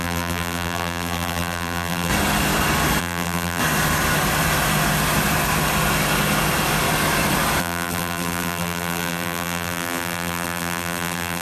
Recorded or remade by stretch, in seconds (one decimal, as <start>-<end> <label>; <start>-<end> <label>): 0.0-2.1 remade; 2.1-3.0 recorded; 3.0-3.6 remade; 3.6-7.6 recorded; 7.6-11.4 remade